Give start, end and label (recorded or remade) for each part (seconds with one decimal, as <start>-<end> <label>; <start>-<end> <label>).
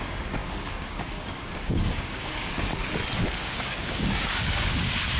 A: 0.0-2.7 remade; 2.7-3.3 recorded; 3.3-5.2 remade